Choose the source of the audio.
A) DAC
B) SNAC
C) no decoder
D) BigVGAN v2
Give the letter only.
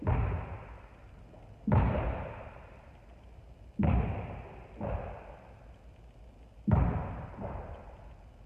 C